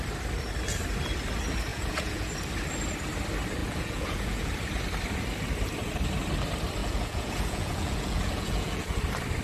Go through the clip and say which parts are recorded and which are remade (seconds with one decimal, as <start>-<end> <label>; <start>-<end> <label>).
0.0-1.7 recorded; 1.7-2.3 remade; 2.3-3.6 recorded; 3.6-4.5 remade; 4.5-6.8 recorded; 6.8-9.0 remade; 9.0-9.4 recorded